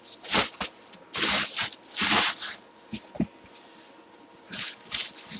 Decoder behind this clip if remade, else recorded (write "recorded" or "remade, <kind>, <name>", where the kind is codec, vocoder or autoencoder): recorded